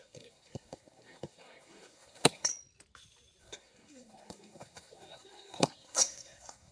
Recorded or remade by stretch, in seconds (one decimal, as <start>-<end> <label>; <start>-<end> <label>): 0.0-2.5 remade; 2.5-3.4 recorded; 3.4-6.7 remade